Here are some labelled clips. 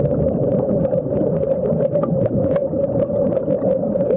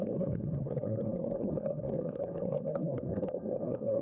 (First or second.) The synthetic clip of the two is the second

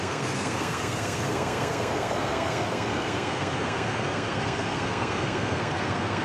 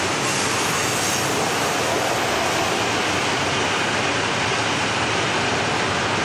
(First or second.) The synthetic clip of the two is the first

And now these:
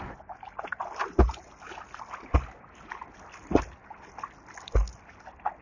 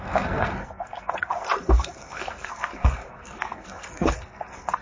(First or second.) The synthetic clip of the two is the second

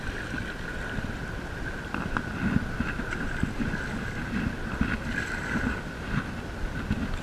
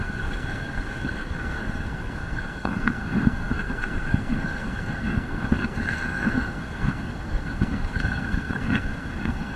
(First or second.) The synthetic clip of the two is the second